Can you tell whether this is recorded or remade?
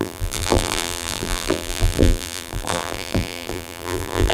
remade